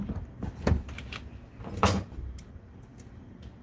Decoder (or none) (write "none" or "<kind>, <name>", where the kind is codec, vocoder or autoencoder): none